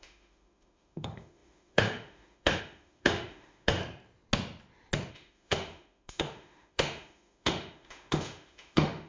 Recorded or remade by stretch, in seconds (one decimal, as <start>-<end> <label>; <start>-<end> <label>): 0.0-3.8 remade; 3.8-5.1 recorded; 5.1-9.1 remade